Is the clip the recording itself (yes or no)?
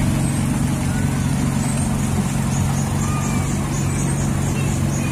yes